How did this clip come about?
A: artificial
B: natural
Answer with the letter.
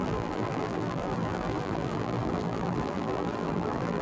A